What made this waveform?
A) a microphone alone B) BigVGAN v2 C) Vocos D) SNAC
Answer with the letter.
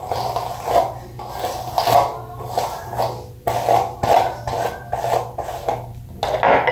A